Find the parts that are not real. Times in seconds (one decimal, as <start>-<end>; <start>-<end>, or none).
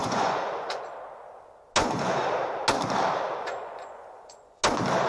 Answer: 0.0-0.8; 1.8-2.3; 3.4-4.6